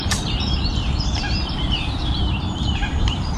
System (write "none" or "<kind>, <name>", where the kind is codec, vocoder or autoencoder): vocoder, BigVGAN v2